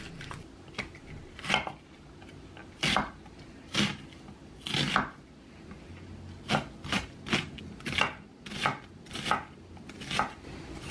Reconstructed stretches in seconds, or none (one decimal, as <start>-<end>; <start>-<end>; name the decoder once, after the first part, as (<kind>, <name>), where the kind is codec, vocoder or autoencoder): none